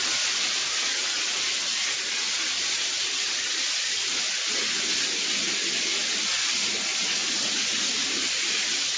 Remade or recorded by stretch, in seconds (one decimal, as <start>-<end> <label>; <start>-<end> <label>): 0.0-9.0 recorded